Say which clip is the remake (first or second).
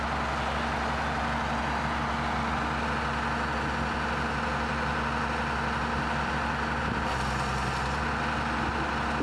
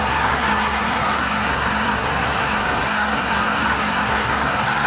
second